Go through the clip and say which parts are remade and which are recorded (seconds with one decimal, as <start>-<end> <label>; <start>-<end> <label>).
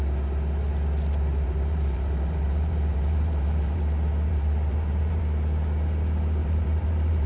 0.0-1.3 recorded; 1.3-3.8 remade; 3.8-4.3 recorded; 4.3-5.2 remade; 5.2-6.4 recorded; 6.4-7.3 remade